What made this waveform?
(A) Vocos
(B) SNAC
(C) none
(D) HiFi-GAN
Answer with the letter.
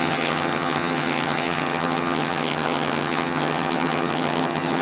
D